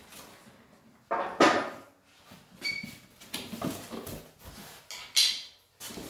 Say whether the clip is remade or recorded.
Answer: recorded